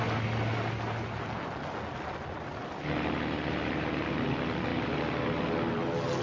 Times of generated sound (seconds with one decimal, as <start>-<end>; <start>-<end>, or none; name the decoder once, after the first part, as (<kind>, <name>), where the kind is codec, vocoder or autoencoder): none

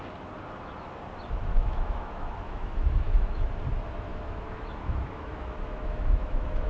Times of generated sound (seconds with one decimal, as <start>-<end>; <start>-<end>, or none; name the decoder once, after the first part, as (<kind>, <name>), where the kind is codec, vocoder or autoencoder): 1.5-3.5 (autoencoder, DAC-VAE); 4.1-6.7

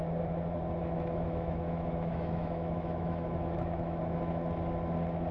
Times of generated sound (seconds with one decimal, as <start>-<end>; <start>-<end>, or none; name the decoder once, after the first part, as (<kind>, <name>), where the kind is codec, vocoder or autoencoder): 0.8-4.0 (autoencoder, DAC-VAE)

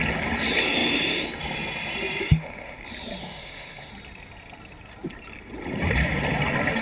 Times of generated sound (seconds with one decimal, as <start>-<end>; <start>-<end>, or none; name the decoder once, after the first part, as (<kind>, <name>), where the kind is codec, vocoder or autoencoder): 2.2-2.8 (autoencoder, DAC-VAE); 3.2-3.9

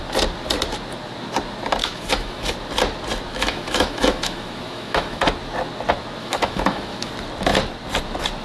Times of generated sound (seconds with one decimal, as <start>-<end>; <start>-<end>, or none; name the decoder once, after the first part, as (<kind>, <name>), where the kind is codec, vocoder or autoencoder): 1.8-2.5 (autoencoder, DAC-VAE); 3.3-5.2; 6.2-7.1

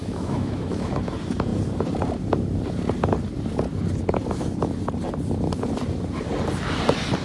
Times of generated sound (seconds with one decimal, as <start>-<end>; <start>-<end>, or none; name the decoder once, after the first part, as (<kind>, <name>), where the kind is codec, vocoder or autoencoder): 0.0-0.9 (autoencoder, DAC-VAE)